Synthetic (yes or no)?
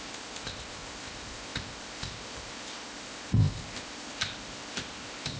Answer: yes